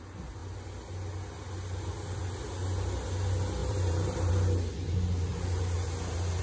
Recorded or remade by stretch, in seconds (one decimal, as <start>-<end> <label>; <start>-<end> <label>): 0.0-3.6 recorded; 3.6-4.3 remade; 4.3-5.3 recorded; 5.3-6.4 remade